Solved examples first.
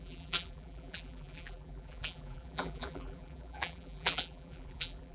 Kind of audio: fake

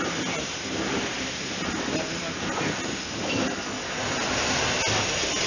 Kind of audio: real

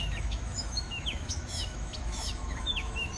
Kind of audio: fake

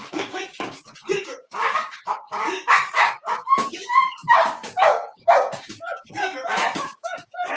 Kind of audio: fake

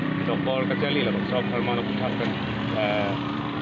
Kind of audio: real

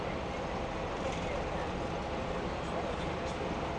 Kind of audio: real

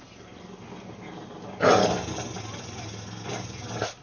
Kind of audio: real